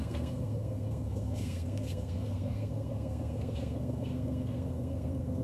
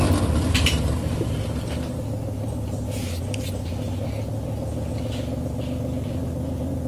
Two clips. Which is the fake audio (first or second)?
first